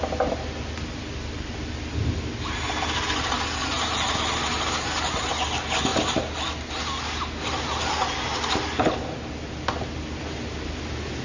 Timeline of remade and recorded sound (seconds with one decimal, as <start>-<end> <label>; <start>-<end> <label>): 0.0-11.2 recorded